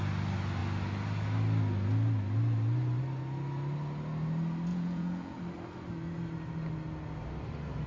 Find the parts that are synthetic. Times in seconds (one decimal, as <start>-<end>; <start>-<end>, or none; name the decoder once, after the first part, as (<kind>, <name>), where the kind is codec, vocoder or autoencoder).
4.7-5.4 (vocoder, Vocos)